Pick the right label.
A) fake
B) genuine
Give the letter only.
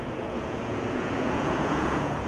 A